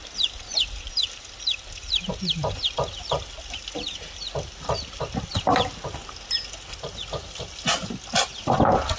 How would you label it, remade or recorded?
remade